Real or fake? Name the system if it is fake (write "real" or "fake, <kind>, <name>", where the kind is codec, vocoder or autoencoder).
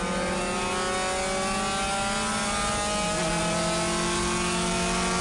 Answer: real